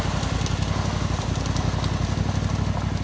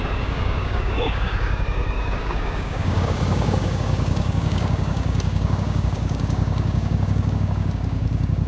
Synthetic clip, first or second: second